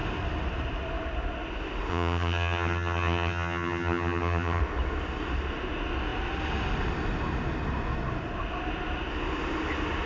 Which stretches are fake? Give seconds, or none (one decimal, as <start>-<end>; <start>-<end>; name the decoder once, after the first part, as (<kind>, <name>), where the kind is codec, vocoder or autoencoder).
1.9-4.6 (vocoder, HiFi-GAN)